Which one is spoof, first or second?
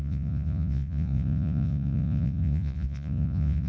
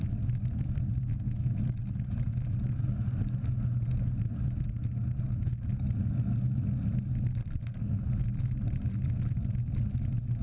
first